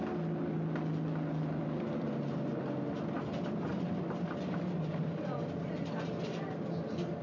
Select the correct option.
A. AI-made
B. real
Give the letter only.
B